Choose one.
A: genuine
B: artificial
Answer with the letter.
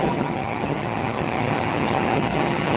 B